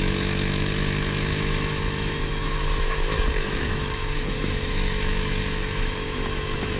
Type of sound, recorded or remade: remade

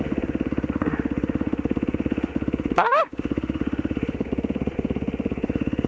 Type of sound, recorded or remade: remade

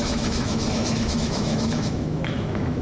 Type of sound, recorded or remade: remade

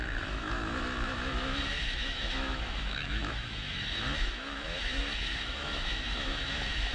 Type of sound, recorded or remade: remade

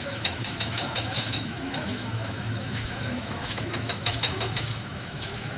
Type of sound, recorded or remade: remade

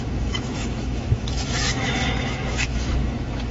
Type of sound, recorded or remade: remade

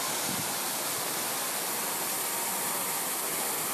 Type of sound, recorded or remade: recorded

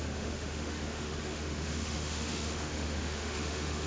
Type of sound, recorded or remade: remade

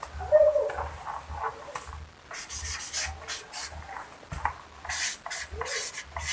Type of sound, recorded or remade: recorded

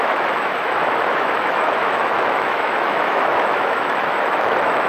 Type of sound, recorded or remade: remade